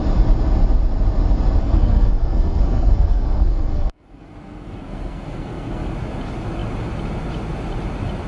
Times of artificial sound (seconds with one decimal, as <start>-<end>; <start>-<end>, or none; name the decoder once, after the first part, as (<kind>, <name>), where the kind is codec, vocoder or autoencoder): 1.6-5.9 (codec, SNAC)